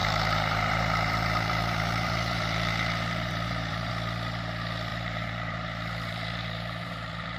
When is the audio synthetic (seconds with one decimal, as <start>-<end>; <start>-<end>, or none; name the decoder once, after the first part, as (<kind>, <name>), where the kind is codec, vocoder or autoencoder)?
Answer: 0.0-3.9 (vocoder, BigVGAN v2); 4.9-7.4